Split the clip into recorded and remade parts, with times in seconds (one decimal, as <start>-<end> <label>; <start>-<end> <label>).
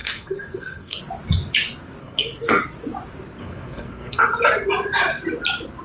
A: 0.0-1.0 remade; 1.0-2.0 recorded; 2.0-2.6 remade; 2.6-3.4 recorded; 3.4-4.2 remade; 4.2-5.8 recorded